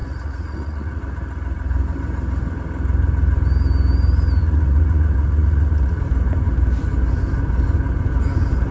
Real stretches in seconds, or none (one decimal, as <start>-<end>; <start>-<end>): 1.0-4.4; 6.0-8.7